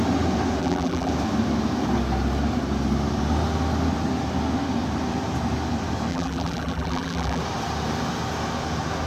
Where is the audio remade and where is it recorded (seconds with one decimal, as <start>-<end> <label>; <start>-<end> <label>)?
0.0-0.6 recorded; 0.6-1.1 remade; 1.1-6.1 recorded; 6.1-7.4 remade; 7.4-9.1 recorded